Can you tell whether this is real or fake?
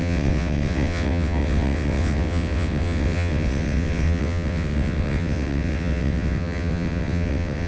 fake